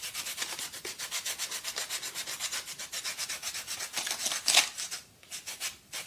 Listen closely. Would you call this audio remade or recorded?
recorded